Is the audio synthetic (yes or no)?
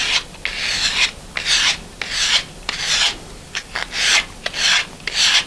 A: no